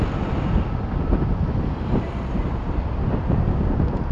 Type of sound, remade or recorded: recorded